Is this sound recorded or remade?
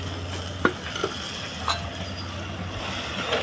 recorded